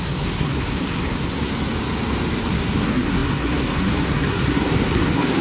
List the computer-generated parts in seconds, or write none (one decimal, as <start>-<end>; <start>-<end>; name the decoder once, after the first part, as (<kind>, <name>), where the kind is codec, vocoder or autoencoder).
0.0-1.5 (codec, SNAC); 2.5-5.4